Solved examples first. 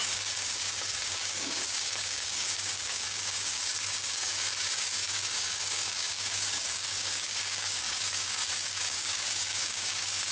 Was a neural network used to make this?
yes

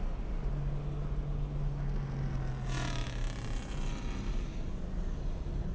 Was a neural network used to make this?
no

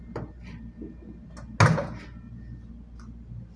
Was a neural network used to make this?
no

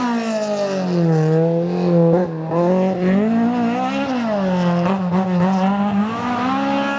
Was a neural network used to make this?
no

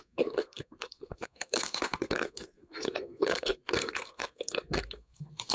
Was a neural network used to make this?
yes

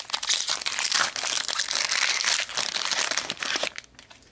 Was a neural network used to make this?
no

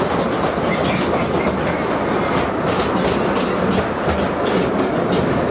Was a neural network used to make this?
no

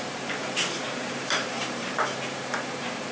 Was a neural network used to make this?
yes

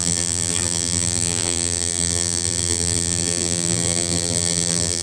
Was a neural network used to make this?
yes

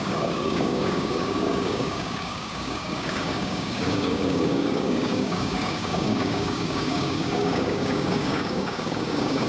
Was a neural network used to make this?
yes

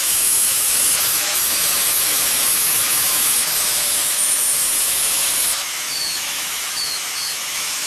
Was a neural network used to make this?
yes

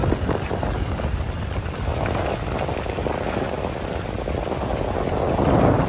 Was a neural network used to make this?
no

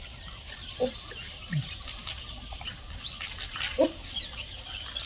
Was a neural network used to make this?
no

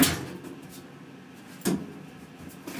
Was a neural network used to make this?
no